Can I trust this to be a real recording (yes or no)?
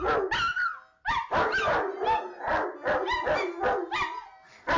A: yes